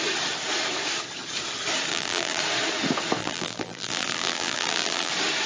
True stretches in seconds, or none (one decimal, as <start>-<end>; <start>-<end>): 0.0-1.9; 2.4-3.2; 5.1-5.5